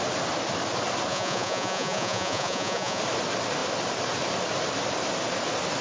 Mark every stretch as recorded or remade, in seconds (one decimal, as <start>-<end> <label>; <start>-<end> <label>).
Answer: 0.0-1.1 recorded; 1.1-3.0 remade; 3.0-5.8 recorded